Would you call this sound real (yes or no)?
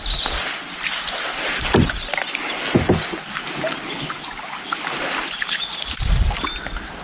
yes